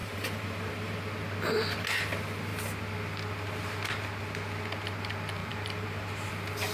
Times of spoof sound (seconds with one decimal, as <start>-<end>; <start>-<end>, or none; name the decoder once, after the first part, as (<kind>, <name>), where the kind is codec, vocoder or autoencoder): 0.0-1.0 (vocoder, BigVGAN v2); 5.4-6.3